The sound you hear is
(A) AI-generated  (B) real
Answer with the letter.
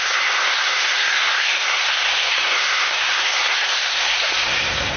A